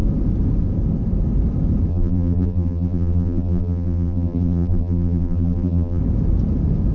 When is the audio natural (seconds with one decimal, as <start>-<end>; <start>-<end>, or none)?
0.0-1.9; 6.0-6.9